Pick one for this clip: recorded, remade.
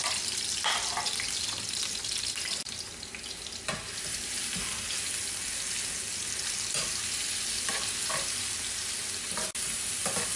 recorded